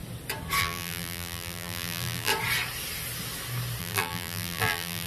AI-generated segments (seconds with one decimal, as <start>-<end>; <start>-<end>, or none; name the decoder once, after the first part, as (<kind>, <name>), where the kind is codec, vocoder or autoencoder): 0.6-2.3 (vocoder, BigVGAN v2); 3.8-5.1

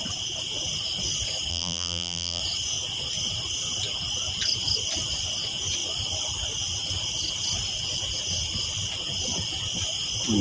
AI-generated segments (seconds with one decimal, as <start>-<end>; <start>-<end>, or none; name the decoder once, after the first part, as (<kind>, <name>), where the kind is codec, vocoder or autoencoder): 1.5-2.4 (vocoder, BigVGAN v2)

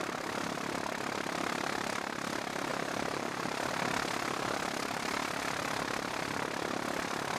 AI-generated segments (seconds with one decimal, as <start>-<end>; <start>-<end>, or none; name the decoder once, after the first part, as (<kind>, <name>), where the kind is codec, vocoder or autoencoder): 2.7-3.7 (vocoder, BigVGAN v2)

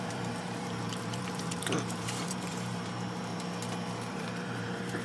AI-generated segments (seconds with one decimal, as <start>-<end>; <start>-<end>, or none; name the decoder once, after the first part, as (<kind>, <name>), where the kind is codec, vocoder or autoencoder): 0.0-3.3 (vocoder, BigVGAN v2); 4.1-5.0

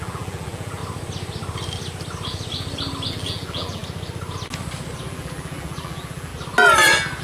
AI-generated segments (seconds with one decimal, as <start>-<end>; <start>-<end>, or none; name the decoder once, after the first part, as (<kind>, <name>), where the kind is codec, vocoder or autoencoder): 0.0-0.8 (vocoder, BigVGAN v2); 3.1-3.8; 5.1-6.3

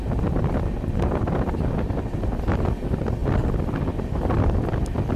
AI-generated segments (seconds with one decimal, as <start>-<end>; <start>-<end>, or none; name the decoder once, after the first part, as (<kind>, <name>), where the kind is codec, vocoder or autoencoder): none

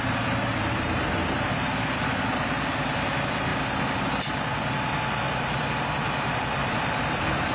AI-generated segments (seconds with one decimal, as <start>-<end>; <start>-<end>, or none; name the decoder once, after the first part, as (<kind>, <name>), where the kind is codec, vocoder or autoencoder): 0.5-3.1 (vocoder, BigVGAN v2); 6.6-7.5